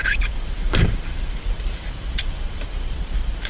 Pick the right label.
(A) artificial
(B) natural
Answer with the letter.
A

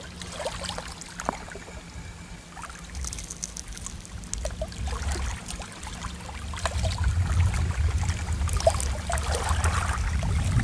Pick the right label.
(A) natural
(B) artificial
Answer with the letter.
A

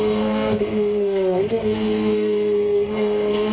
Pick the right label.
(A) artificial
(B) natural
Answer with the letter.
A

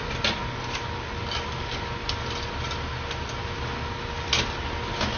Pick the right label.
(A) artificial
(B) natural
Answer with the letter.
B